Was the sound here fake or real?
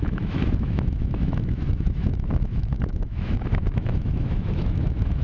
fake